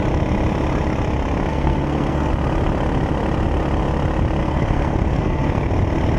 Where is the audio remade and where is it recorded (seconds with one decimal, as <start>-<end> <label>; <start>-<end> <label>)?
0.0-1.5 recorded; 1.5-2.3 remade; 2.3-4.4 recorded; 4.4-5.7 remade; 5.7-6.2 recorded